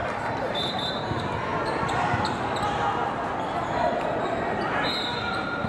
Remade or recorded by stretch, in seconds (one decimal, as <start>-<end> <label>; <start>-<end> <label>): 0.0-0.8 remade; 0.8-5.7 recorded